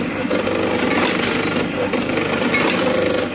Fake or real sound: real